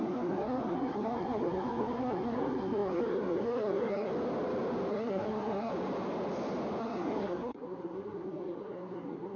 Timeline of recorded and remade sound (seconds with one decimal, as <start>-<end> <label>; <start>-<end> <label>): 0.0-4.1 remade; 4.1-4.9 recorded; 4.9-5.7 remade; 5.7-6.8 recorded; 6.8-9.4 remade